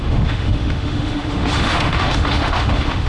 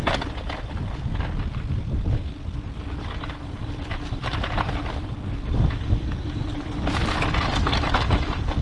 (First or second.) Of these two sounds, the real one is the second